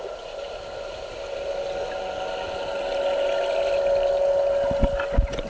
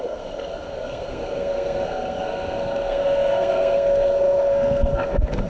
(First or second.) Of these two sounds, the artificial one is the second